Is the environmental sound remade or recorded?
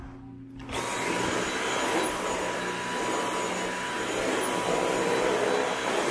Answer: recorded